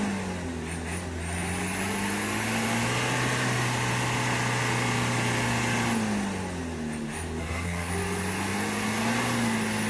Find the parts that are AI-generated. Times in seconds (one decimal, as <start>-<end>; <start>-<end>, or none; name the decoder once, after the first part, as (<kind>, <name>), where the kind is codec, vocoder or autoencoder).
7.4-7.9 (codec, SNAC)